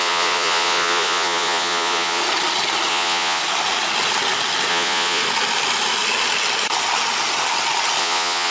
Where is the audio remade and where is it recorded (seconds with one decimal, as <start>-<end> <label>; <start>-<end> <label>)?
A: 0.0-2.2 remade; 2.2-2.9 recorded; 2.9-3.4 remade; 3.4-4.7 recorded; 4.7-5.2 remade; 5.2-8.0 recorded; 8.0-8.5 remade